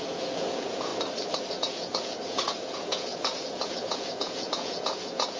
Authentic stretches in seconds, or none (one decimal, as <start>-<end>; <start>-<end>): 0.9-1.5